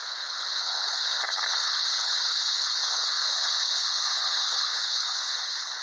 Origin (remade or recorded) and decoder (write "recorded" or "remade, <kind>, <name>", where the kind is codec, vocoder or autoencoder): remade, codec, HILCodec